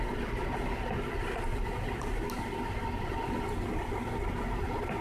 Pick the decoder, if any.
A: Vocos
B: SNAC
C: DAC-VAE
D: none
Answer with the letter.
D